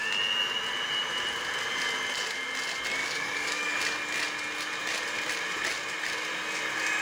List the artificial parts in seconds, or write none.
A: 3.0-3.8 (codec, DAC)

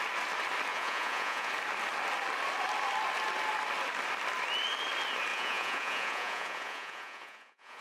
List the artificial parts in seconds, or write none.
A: 0.7-1.5 (vocoder, Vocos); 5.3-7.8